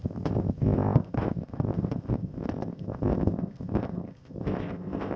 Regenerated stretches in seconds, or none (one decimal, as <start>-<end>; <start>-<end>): 0.0-5.2